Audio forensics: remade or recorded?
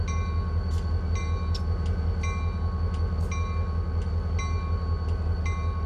recorded